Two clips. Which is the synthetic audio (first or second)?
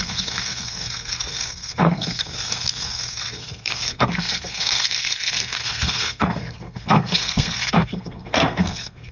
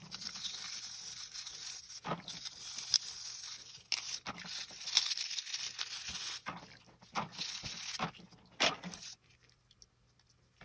first